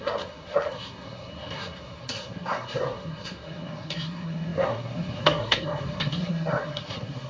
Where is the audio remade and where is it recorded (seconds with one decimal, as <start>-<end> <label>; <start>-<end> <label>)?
0.0-7.3 remade